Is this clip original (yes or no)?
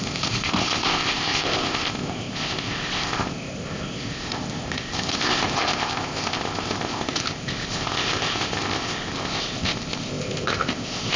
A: no